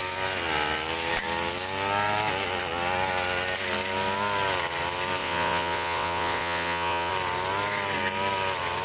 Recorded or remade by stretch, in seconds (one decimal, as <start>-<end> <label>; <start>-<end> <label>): 0.0-5.2 recorded; 5.2-7.1 remade; 7.1-8.8 recorded